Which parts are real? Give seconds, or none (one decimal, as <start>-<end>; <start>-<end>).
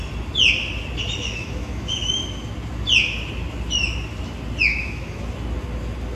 0.0-1.2; 2.2-4.7; 5.2-6.2